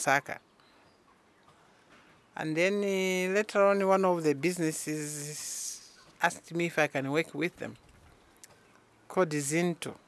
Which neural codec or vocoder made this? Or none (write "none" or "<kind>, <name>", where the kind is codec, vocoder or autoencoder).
none